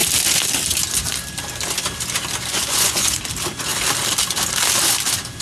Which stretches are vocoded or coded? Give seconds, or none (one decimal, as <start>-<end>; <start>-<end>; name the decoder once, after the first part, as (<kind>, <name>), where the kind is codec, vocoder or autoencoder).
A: 2.5-3.2 (vocoder, Vocos)